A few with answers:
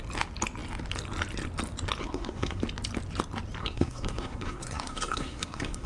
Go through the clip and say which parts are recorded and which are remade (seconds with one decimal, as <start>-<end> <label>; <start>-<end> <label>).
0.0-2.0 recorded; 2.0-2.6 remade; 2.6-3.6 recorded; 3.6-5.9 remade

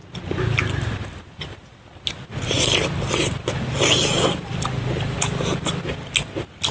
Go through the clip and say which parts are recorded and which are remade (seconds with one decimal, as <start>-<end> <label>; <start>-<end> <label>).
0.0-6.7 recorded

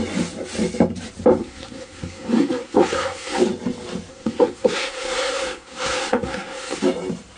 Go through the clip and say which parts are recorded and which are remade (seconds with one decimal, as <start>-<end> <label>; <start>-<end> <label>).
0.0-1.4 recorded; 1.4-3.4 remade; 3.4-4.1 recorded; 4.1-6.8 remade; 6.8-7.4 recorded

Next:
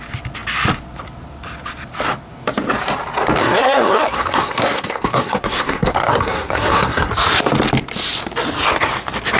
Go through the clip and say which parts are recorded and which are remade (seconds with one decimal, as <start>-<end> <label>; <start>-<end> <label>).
0.0-3.4 recorded; 3.4-7.1 remade; 7.1-9.4 recorded

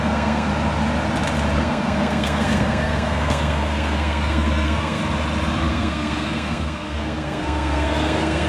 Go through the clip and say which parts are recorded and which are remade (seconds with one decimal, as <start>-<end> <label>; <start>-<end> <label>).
0.0-0.5 remade; 0.5-1.6 recorded; 1.6-5.0 remade; 5.0-5.7 recorded; 5.7-8.5 remade